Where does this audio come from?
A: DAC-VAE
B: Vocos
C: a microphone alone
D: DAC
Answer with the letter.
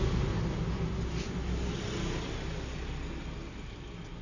C